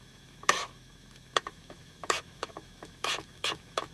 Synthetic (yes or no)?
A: yes